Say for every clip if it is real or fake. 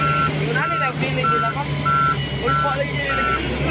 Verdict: real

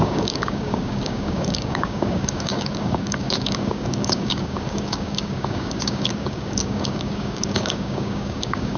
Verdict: fake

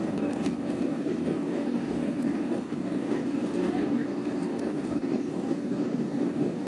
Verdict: fake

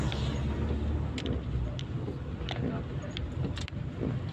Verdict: real